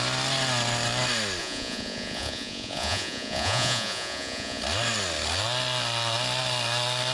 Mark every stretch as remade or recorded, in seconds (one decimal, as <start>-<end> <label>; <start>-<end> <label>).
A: 0.0-1.4 recorded; 1.4-4.6 remade; 4.6-7.1 recorded